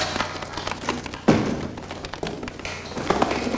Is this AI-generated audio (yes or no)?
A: no